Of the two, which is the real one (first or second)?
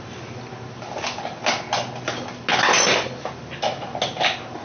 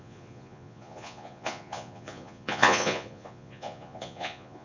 first